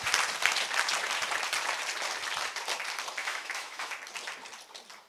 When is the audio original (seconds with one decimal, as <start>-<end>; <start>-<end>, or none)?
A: 0.0-3.2; 3.9-5.1